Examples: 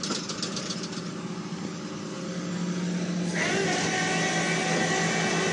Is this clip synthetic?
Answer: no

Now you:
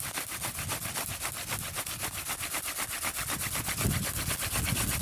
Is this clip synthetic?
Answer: no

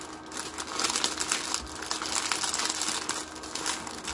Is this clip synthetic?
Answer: no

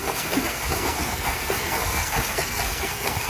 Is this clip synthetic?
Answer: yes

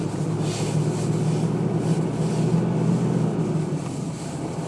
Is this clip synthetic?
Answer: no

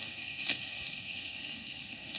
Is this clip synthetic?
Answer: yes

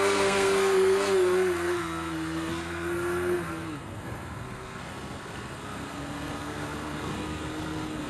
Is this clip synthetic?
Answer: yes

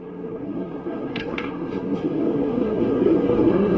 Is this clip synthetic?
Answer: yes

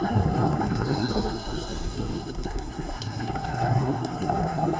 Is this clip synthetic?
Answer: yes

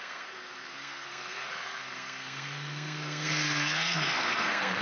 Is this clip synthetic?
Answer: yes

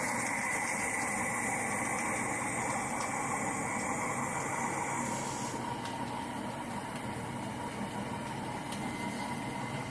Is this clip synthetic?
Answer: no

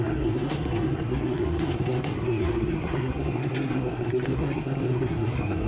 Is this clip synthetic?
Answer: yes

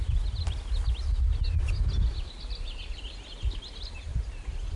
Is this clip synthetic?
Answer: no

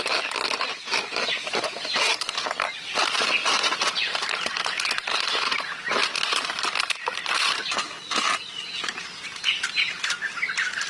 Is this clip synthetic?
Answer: no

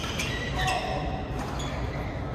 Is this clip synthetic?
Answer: no